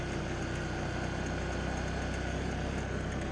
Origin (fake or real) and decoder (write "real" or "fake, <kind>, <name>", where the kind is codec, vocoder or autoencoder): real